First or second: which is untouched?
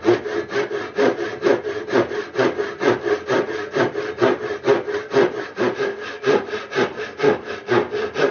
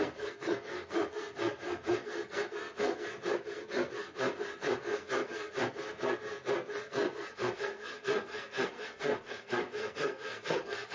first